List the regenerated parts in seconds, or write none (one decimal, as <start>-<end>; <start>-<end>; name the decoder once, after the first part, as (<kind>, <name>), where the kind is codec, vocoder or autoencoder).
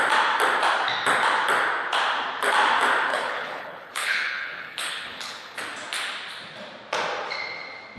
3.1-5.6 (codec, HILCodec)